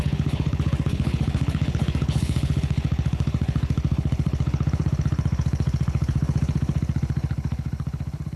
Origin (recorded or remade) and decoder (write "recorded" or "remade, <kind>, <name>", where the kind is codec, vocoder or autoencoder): remade, codec, HILCodec